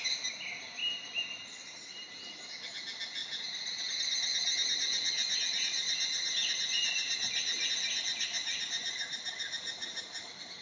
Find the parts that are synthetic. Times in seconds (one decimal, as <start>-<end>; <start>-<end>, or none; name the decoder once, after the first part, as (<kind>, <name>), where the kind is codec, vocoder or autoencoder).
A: 0.8-2.5 (vocoder, BigVGAN v2)

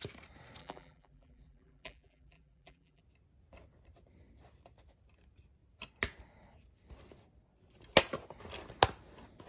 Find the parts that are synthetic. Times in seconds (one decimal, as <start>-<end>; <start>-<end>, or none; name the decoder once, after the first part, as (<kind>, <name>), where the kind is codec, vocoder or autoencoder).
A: 0.6-3.0 (vocoder, BigVGAN v2)

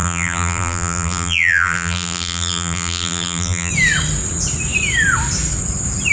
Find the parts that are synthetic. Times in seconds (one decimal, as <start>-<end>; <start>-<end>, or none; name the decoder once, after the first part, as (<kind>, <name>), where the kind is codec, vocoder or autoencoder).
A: 0.0-3.7 (vocoder, BigVGAN v2)

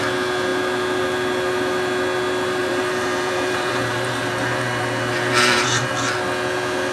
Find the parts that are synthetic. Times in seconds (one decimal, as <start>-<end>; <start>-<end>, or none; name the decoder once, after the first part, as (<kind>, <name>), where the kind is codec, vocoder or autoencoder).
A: 2.6-5.7 (vocoder, BigVGAN v2)

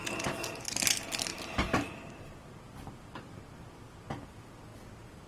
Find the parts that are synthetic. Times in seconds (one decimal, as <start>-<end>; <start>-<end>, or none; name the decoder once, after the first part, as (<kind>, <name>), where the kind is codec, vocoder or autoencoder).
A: 1.3-2.1 (vocoder, BigVGAN v2); 4.7-5.3